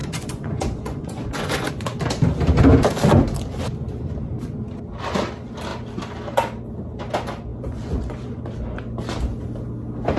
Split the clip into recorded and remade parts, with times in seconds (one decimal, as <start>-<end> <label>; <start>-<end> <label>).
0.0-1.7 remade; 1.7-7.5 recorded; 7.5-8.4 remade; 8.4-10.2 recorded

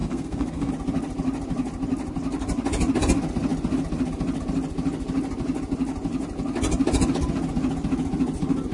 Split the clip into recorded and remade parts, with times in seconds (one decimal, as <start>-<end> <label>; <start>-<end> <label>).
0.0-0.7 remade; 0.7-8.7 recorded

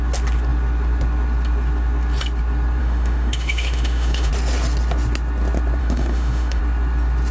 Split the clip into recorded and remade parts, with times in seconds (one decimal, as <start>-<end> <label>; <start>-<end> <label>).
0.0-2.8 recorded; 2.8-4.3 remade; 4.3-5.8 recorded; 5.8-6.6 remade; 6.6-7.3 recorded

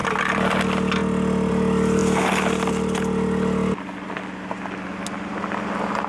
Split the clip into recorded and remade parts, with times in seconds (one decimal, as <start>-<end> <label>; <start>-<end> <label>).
0.0-6.1 recorded